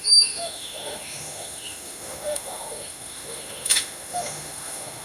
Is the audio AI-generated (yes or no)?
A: yes